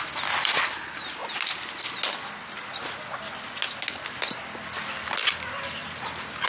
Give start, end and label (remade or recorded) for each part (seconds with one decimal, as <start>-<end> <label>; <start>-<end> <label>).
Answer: 0.0-6.5 recorded